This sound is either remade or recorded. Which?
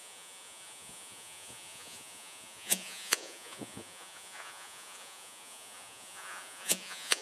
remade